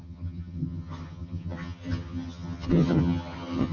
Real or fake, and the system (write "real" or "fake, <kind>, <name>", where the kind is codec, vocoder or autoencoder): fake, vocoder, HiFi-GAN